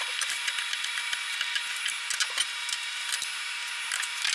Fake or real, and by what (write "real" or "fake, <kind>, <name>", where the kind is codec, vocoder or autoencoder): real